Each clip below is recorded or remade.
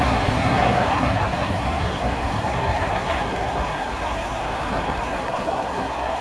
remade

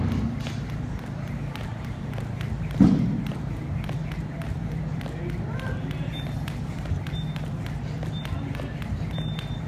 recorded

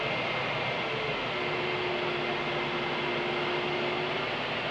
recorded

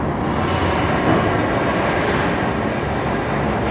recorded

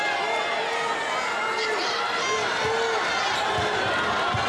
recorded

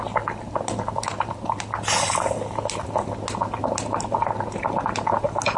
recorded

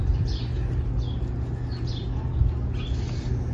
recorded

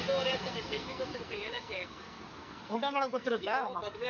remade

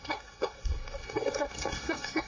remade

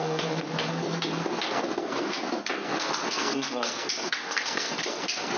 remade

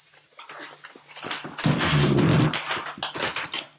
recorded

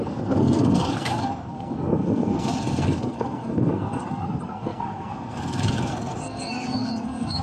remade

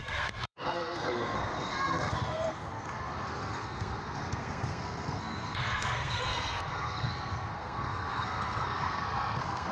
remade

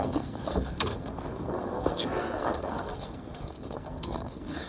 remade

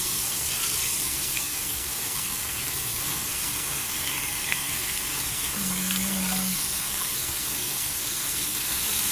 remade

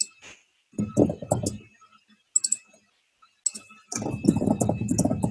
recorded